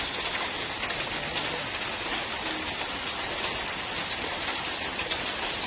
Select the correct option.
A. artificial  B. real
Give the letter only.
B